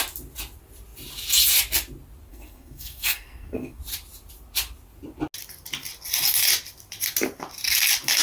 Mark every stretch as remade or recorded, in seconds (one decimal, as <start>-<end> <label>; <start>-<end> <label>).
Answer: 0.0-2.3 recorded; 2.3-3.8 remade; 3.8-8.2 recorded